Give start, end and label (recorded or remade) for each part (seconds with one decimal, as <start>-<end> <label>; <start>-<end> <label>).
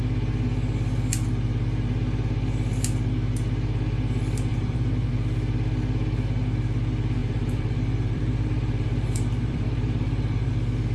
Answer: 0.0-4.5 recorded; 4.5-5.1 remade; 5.1-7.2 recorded; 7.2-10.5 remade; 10.5-10.9 recorded